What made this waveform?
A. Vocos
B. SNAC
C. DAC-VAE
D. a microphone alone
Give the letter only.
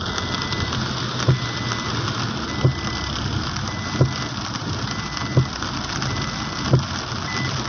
D